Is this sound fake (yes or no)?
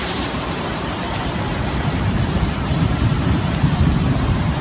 yes